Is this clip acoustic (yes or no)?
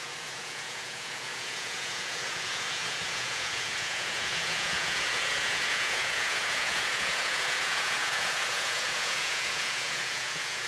no